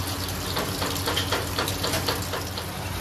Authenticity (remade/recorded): recorded